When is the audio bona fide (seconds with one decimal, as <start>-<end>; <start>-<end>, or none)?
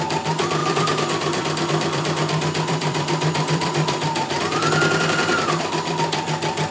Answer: 0.0-0.6; 4.4-5.2; 5.9-6.7